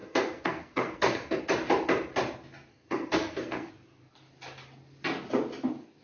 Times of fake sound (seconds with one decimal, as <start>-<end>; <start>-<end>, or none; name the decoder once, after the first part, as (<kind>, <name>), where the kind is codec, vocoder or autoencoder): 0.0-1.4 (codec, SNAC); 2.7-3.7